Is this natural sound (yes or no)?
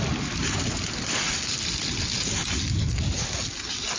yes